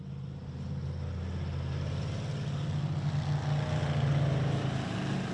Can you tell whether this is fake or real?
real